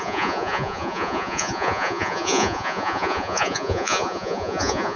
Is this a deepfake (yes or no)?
yes